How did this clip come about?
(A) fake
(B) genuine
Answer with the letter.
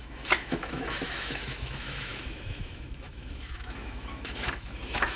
A